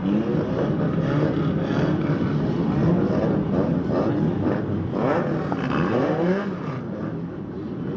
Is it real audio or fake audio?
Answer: real